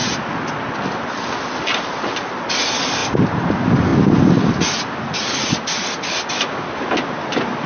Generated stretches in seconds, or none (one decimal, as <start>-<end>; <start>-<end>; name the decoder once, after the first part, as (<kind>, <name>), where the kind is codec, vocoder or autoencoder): 3.0-3.5 (vocoder, BigVGAN v2)